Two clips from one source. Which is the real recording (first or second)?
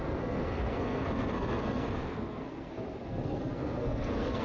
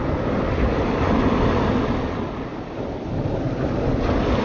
second